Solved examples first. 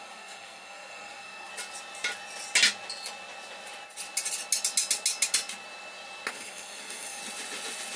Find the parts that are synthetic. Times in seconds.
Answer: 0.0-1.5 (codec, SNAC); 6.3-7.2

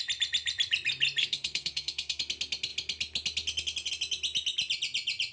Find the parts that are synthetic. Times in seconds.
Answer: 1.2-2.2 (codec, SNAC)

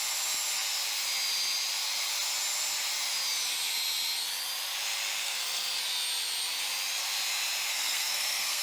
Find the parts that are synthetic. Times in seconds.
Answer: 5.2-5.8 (codec, SNAC); 7.7-8.6